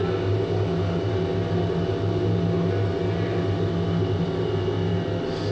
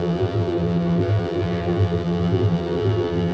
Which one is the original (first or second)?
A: first